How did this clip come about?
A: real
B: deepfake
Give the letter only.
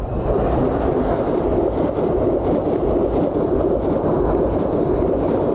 A